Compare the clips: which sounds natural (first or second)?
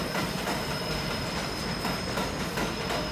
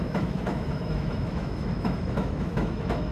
first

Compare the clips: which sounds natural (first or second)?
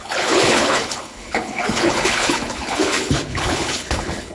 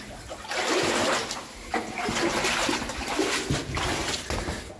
second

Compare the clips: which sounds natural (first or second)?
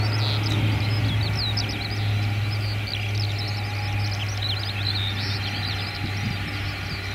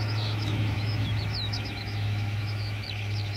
first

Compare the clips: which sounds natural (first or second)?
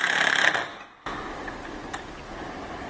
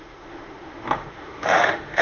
first